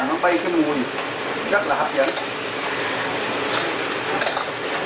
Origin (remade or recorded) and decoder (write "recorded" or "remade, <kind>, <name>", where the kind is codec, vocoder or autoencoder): recorded